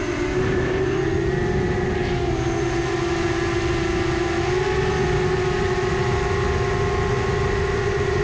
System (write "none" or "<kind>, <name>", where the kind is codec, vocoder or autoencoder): none